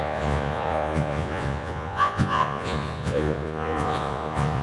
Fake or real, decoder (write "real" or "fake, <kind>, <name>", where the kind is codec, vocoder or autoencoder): fake, vocoder, Vocos